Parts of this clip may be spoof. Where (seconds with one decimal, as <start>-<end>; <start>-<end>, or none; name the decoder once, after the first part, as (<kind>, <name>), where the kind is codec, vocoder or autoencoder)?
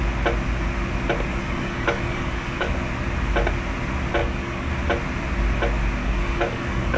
1.3-2.7 (codec, DAC); 4.2-4.7; 6.0-7.0